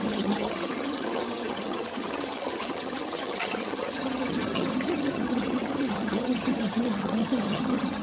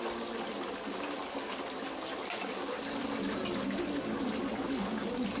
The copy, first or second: first